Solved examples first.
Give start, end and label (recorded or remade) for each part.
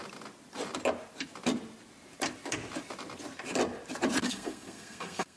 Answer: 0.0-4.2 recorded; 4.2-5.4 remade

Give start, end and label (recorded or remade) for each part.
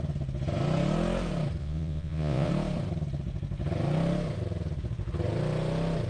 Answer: 0.0-1.6 recorded; 1.6-2.5 remade; 2.5-6.1 recorded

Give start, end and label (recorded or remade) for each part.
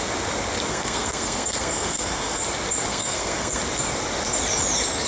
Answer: 0.0-0.7 recorded; 0.7-2.4 remade; 2.4-2.9 recorded; 2.9-3.6 remade; 3.6-5.1 recorded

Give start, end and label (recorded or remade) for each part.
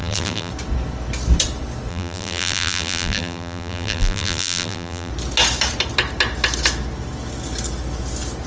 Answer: 0.0-0.5 remade; 0.5-1.9 recorded; 1.9-5.1 remade; 5.1-8.5 recorded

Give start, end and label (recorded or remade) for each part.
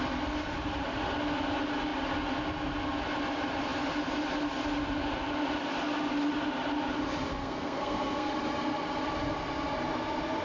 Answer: 0.0-7.4 recorded; 7.4-8.3 remade; 8.3-10.4 recorded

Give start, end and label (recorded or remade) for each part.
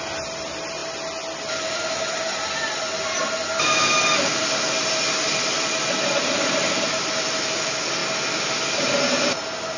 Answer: 0.0-9.8 recorded